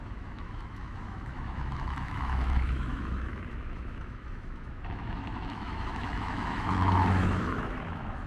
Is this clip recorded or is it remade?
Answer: remade